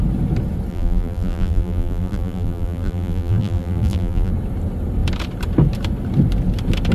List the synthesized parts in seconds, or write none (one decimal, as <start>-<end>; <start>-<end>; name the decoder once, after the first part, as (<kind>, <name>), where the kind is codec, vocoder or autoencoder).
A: 0.7-4.3 (vocoder, BigVGAN v2)